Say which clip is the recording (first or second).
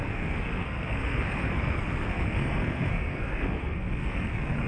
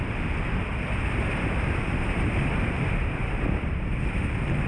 second